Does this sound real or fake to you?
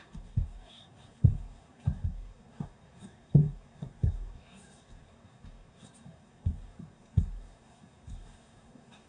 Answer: fake